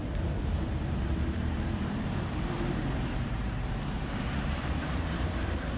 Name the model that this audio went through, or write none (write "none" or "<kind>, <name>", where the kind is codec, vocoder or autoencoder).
vocoder, BigVGAN v2